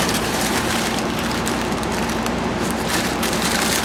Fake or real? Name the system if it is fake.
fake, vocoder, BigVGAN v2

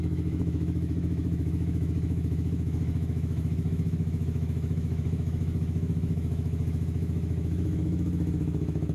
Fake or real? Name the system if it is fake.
fake, autoencoder, DAC-VAE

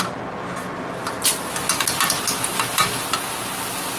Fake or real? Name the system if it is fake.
real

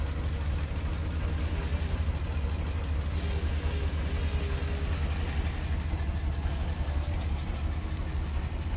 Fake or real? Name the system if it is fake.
real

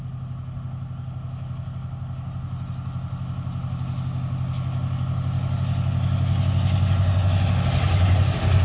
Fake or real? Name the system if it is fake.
real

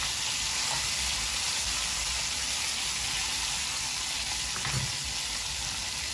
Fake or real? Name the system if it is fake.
real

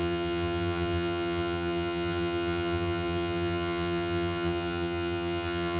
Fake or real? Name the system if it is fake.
fake, vocoder, HiFi-GAN